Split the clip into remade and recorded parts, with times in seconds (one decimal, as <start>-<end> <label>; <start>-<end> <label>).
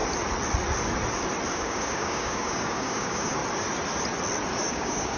0.0-1.5 recorded; 1.5-3.4 remade; 3.4-4.7 recorded; 4.7-5.2 remade